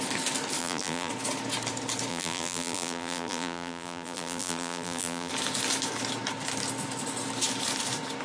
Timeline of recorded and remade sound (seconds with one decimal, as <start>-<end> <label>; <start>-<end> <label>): 0.0-0.6 recorded; 0.6-1.1 remade; 1.1-2.1 recorded; 2.1-5.3 remade; 5.3-8.2 recorded